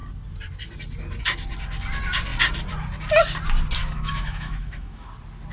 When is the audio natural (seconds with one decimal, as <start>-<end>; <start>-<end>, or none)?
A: 0.0-3.8; 5.1-5.5